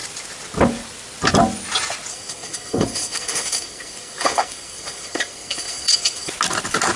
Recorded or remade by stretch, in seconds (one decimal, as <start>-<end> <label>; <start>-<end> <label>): 0.0-2.1 recorded; 2.1-6.3 remade; 6.3-7.0 recorded